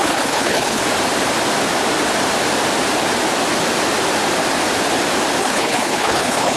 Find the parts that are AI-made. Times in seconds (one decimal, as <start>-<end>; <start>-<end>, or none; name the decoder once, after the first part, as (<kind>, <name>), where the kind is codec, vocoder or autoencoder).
0.0-0.8 (codec, HILCodec); 5.4-6.6